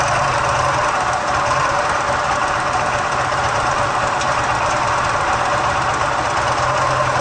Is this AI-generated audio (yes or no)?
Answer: no